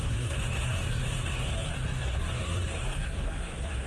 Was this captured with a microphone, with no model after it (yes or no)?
no